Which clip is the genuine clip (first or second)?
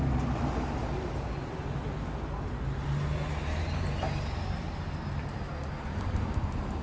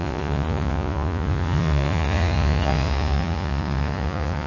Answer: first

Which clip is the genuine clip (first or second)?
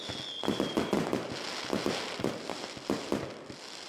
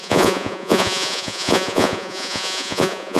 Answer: first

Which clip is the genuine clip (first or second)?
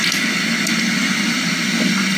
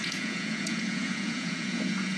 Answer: first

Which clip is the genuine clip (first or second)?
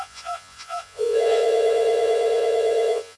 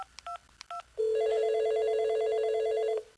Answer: second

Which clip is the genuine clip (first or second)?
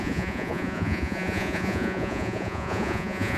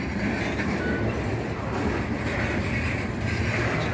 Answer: second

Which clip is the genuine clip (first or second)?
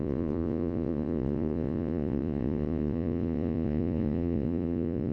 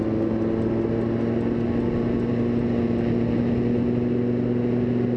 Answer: second